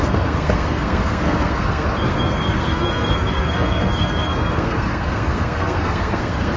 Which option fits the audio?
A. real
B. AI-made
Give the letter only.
B